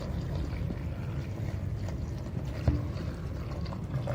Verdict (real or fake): real